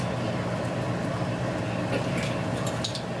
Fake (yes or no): no